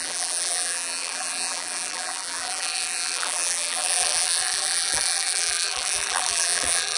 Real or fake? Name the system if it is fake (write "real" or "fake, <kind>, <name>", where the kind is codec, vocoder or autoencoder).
fake, vocoder, BigVGAN v2